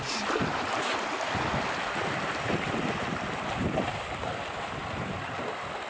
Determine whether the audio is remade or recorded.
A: recorded